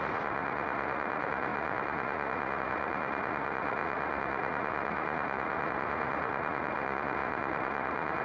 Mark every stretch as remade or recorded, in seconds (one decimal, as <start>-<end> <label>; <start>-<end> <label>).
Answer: 0.0-8.2 remade